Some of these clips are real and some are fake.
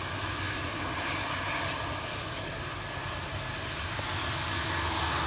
real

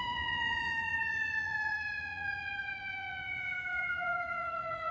fake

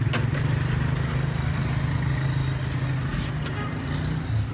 real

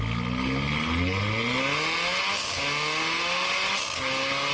real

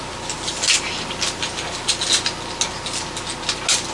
real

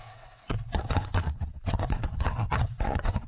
fake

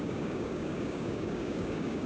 fake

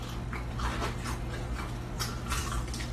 real